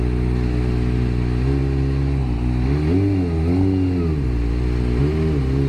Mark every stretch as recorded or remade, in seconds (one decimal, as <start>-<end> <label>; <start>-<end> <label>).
0.0-5.7 recorded